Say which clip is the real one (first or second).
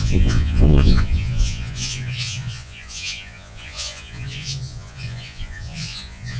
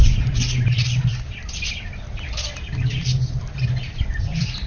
second